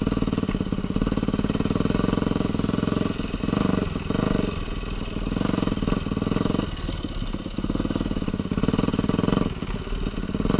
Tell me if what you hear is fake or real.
real